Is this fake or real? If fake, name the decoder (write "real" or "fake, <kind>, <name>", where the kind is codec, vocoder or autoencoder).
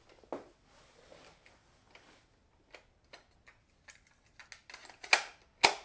real